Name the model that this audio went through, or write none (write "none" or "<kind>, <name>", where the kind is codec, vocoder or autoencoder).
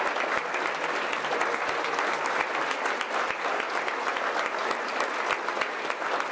none